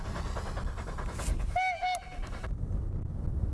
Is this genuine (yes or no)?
yes